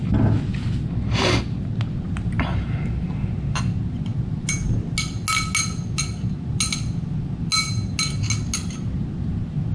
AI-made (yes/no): no